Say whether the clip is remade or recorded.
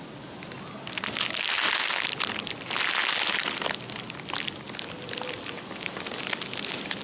recorded